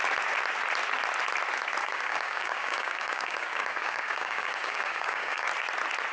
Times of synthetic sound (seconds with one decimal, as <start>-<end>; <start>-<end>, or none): 1.8-5.5